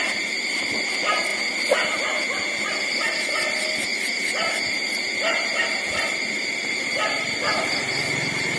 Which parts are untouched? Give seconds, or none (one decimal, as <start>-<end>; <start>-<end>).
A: 0.0-3.9